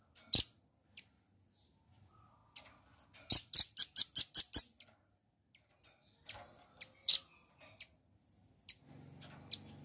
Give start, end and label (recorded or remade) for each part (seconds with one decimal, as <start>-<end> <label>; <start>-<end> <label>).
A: 0.0-9.8 recorded